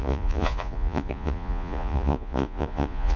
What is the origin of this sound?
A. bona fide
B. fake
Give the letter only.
B